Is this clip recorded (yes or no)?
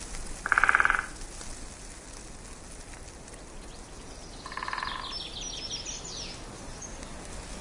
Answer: yes